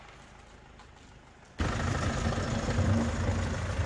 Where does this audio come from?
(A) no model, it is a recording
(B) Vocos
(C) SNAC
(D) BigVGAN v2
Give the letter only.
A